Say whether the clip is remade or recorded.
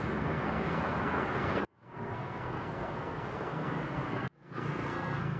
remade